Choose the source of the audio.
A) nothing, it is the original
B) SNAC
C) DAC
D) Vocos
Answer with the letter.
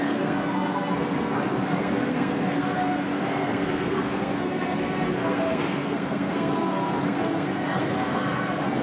B